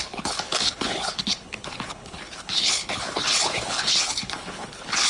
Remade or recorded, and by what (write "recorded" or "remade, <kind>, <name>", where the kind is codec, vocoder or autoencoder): remade, codec, HILCodec